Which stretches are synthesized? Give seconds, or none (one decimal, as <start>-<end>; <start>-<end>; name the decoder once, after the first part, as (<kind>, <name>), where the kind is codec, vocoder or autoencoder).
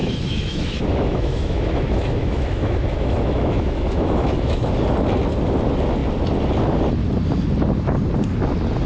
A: 0.0-4.7 (autoencoder, DAC-VAE)